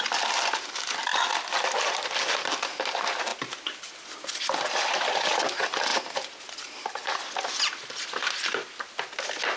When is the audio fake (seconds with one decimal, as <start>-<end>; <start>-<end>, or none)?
none